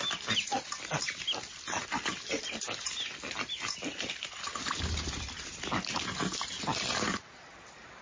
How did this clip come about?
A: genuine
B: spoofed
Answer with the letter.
A